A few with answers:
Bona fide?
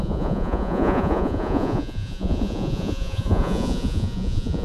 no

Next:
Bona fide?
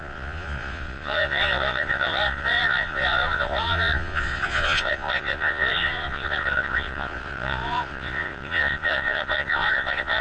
no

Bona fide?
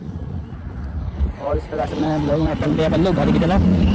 no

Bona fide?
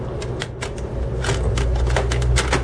yes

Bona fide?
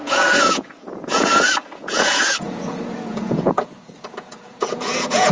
no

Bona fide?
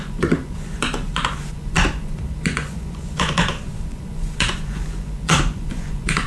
no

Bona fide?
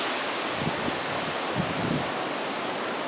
yes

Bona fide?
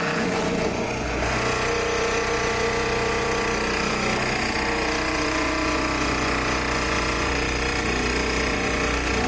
no